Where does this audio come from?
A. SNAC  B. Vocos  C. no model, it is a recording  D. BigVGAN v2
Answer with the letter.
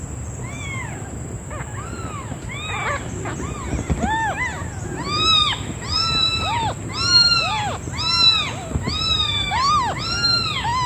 C